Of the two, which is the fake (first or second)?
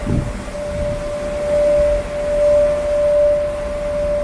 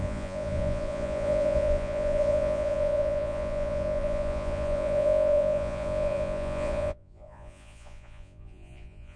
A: second